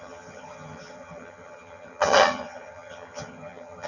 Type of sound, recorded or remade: remade